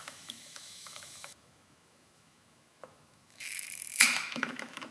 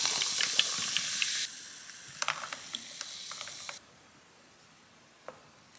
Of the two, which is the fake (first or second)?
first